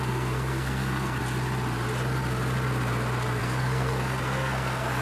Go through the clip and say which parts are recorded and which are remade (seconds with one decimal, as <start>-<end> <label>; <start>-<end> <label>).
0.0-1.2 remade; 1.2-3.4 recorded; 3.4-5.0 remade